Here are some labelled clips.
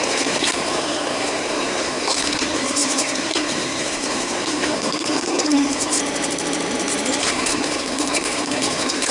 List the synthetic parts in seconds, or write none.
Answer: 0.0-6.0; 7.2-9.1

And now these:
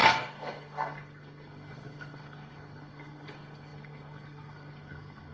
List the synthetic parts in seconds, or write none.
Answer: 0.0-5.3

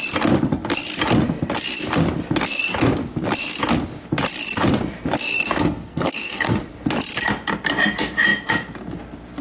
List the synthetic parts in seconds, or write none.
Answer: 5.3-6.6

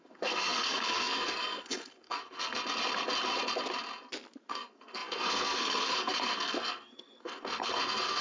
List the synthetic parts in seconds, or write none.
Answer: 0.0-2.6; 4.5-8.2

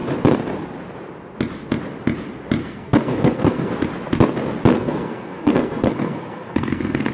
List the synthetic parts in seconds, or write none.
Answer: 2.6-3.7; 4.7-7.1

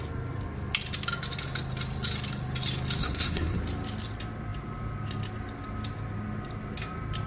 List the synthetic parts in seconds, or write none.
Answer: 3.0-3.6